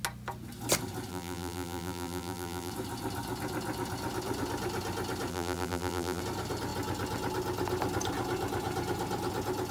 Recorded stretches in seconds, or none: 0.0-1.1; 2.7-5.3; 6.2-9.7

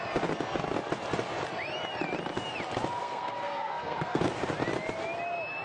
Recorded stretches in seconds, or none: 0.0-3.0; 4.2-5.6